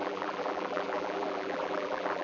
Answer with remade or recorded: remade